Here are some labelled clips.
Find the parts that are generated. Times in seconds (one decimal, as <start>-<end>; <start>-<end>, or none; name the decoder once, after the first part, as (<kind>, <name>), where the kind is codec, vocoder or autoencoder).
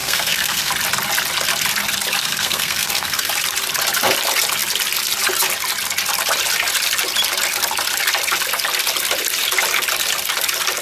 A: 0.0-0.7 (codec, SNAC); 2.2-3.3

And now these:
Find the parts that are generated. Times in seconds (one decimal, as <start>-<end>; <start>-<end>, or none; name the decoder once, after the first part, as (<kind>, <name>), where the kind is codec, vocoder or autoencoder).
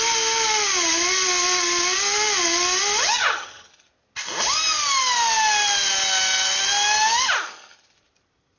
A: 3.2-3.7 (vocoder, HiFi-GAN)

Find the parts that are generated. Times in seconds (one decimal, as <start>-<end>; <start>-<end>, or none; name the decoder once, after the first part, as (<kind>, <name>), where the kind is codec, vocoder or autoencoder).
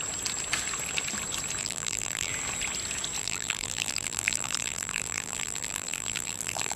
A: 1.6-2.3 (vocoder, BigVGAN v2); 3.2-6.8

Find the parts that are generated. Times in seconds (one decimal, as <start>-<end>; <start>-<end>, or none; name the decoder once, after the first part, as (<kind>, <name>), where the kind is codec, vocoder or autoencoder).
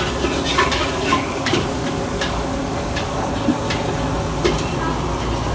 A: 0.5-3.3 (codec, DAC)